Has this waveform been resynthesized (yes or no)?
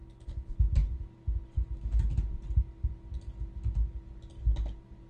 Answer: no